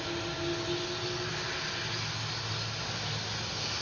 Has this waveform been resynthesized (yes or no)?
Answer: no